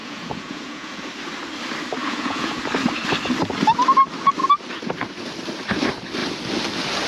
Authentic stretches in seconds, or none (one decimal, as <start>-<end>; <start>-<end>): 1.1-2.0; 2.6-7.1